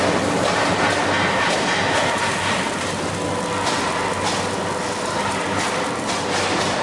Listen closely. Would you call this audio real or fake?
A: real